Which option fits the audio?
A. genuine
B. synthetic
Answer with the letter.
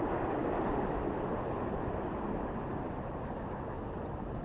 A